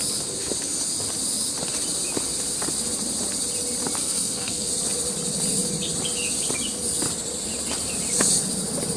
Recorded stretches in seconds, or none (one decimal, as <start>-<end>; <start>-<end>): 0.0-4.0; 4.7-9.0